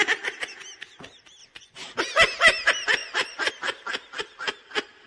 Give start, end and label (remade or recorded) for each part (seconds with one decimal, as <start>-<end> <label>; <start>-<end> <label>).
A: 0.0-1.4 recorded; 1.4-2.0 remade; 2.0-3.0 recorded; 3.0-3.5 remade; 3.5-5.1 recorded